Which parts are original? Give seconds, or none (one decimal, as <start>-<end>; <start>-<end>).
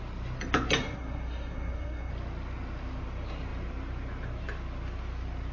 0.0-0.8; 2.1-5.5